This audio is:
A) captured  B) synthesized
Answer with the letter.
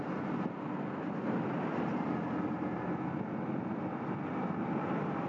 A